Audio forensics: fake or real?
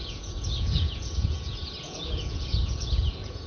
fake